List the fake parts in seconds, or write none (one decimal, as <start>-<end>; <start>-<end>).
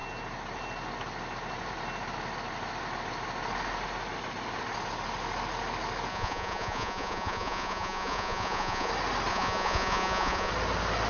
6.1-8.9; 9.3-10.5